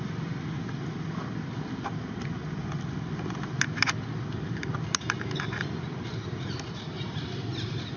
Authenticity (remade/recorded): recorded